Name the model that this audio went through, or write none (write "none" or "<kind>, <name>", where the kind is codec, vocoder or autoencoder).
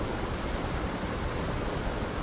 none